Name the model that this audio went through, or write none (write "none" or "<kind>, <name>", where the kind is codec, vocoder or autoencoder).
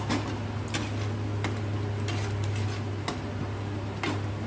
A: none